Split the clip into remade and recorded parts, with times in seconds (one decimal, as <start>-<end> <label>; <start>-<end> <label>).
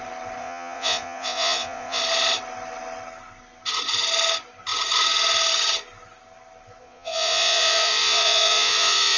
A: 0.0-0.4 recorded; 0.4-2.0 remade; 2.0-6.8 recorded; 6.8-9.2 remade